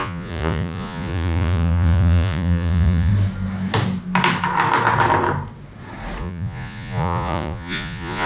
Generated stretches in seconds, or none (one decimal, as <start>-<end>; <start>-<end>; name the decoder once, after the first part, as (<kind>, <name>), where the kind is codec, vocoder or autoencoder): 0.0-3.1 (vocoder, Vocos); 6.2-8.3